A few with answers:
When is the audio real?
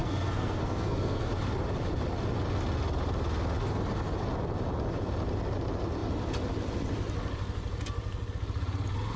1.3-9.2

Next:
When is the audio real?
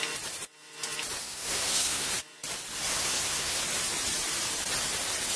0.0-1.2; 2.1-2.9; 3.6-5.4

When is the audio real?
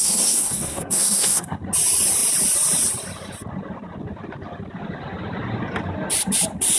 1.6-6.8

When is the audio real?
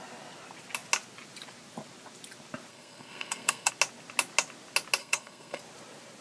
0.0-2.7; 3.7-5.0; 5.6-6.2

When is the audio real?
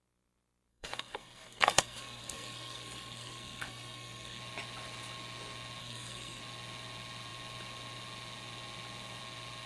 0.0-0.7; 4.4-5.8; 6.4-9.7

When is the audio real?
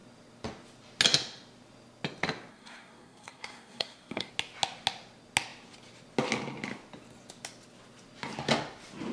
0.0-2.5; 4.3-9.1